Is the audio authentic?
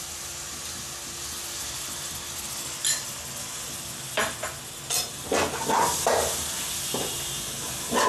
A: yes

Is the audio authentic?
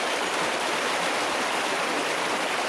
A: yes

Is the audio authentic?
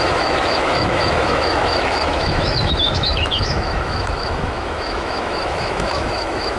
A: no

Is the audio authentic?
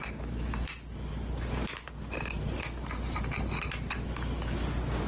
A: yes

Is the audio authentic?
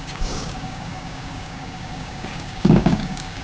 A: no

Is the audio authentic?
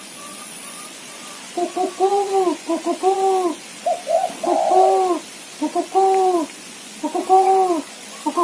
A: no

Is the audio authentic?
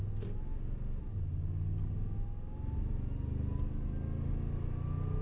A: yes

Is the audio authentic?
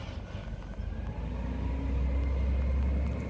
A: yes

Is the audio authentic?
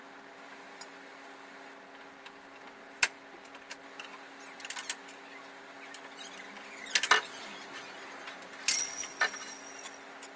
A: yes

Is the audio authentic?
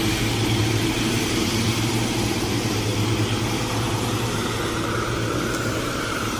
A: no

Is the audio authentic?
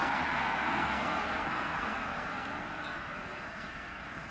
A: no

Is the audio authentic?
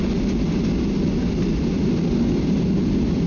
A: yes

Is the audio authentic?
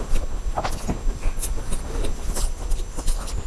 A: yes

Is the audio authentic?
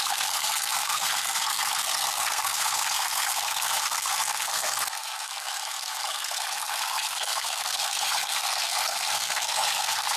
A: no